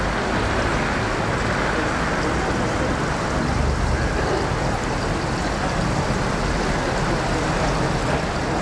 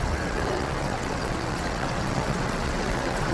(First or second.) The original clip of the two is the first